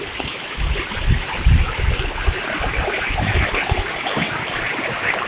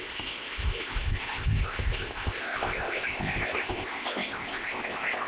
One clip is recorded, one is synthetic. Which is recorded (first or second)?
first